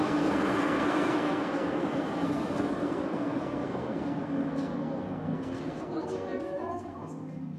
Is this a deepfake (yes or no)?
yes